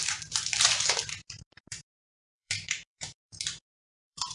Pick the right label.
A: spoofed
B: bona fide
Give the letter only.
A